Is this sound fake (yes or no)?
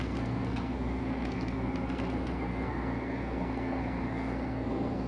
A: yes